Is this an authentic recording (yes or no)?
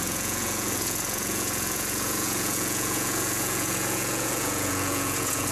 no